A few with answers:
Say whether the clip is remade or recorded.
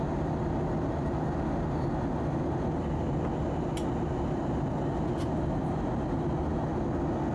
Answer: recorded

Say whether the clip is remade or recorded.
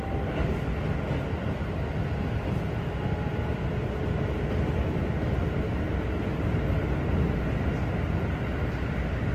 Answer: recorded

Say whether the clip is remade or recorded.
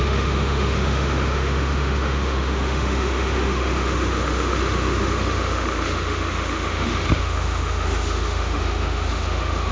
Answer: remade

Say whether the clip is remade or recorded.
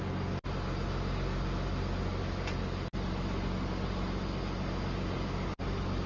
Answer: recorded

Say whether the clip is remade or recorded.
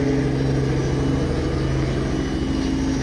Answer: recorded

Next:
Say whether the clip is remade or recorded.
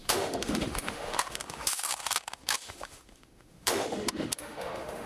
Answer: remade